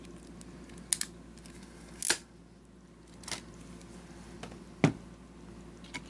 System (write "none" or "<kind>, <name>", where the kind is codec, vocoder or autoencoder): none